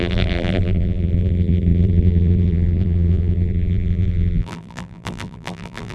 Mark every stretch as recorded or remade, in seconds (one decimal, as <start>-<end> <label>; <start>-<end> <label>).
0.0-5.9 remade